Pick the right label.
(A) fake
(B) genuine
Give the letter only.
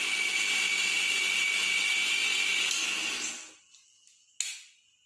B